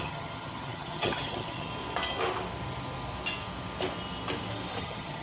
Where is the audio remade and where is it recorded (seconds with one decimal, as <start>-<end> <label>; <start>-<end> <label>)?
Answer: 0.0-1.7 remade; 1.7-4.8 recorded; 4.8-5.2 remade